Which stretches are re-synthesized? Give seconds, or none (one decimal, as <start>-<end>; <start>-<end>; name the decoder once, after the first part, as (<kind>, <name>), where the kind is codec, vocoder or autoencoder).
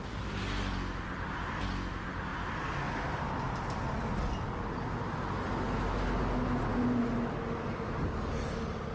none